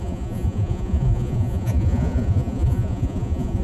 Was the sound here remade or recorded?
remade